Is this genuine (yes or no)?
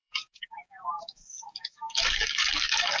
no